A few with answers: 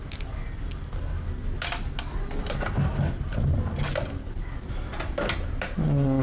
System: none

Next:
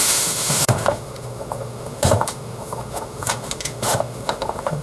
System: autoencoder, DAC-VAE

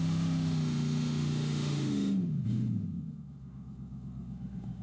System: autoencoder, DAC-VAE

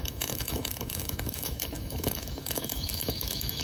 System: autoencoder, DAC-VAE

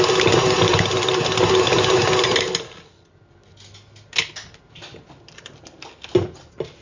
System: none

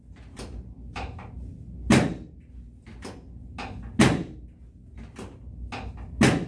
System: none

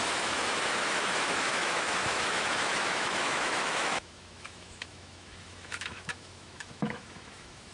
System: autoencoder, DAC-VAE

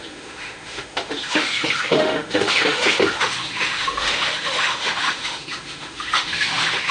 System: autoencoder, DAC-VAE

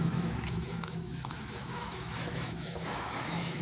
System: autoencoder, DAC-VAE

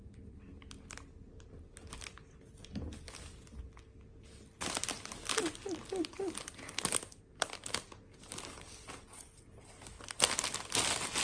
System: none